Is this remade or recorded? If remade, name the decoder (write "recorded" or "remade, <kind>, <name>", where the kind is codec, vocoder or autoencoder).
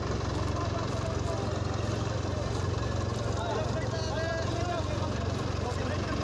recorded